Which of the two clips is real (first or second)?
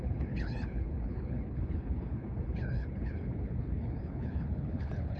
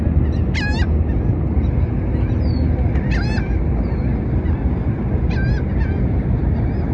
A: second